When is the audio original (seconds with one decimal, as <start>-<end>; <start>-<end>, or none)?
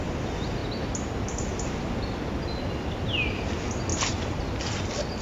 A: 0.0-3.9; 4.6-5.2